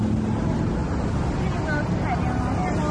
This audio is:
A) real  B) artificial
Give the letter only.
A